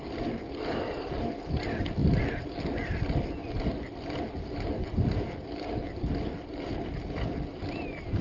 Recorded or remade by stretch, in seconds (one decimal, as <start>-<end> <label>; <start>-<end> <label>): 0.0-8.2 recorded